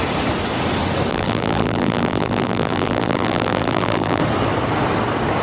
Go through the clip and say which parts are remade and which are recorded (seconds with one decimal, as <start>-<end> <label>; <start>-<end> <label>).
0.0-1.1 recorded; 1.1-4.2 remade; 4.2-5.4 recorded